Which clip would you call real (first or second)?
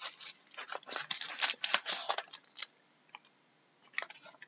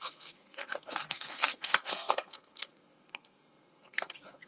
first